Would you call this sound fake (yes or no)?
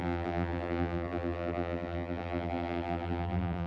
yes